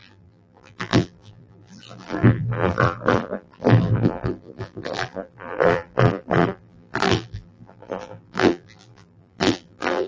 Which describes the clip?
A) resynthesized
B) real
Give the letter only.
A